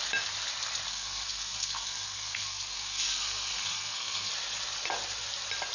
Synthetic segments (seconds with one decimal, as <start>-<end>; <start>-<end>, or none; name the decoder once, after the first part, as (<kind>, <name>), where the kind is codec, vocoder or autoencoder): 0.9-4.3 (codec, SNAC)